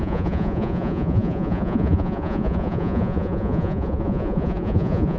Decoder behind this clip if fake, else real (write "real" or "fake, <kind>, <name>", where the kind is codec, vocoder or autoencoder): fake, vocoder, Vocos